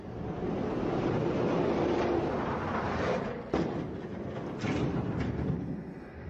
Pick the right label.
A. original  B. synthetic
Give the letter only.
A